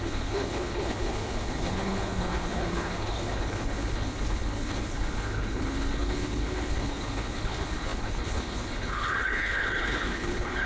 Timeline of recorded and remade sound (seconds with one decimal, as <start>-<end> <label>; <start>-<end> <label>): 0.0-10.7 remade